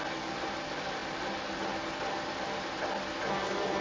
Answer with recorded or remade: recorded